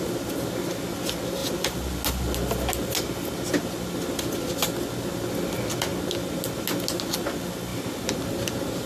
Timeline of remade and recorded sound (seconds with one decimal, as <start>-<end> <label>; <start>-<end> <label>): 0.0-8.9 recorded